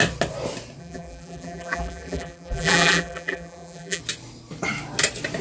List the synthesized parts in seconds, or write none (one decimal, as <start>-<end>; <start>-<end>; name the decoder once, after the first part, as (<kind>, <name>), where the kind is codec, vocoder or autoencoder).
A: 0.8-4.0 (vocoder, BigVGAN v2)